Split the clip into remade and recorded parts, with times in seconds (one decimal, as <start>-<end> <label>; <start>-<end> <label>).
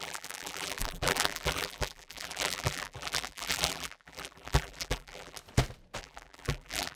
0.0-5.4 remade; 5.4-6.0 recorded; 6.0-7.0 remade